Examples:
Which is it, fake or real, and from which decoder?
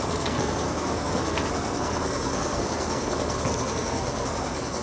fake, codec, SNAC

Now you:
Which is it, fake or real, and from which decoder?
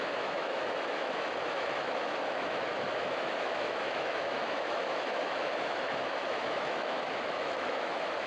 fake, autoencoder, DAC-VAE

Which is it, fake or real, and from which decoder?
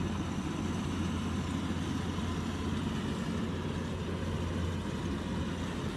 real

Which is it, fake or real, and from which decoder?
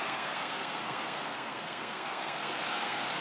fake, codec, SNAC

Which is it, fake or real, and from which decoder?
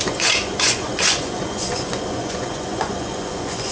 fake, vocoder, Vocos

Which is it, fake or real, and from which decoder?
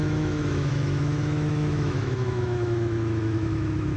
fake, autoencoder, DAC-VAE